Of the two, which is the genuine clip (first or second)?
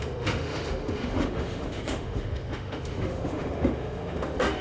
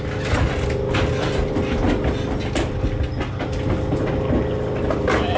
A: second